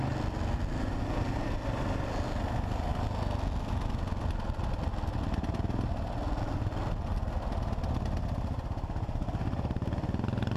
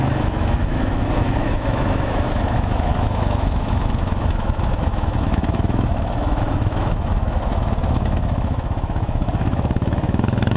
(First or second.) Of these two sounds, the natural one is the first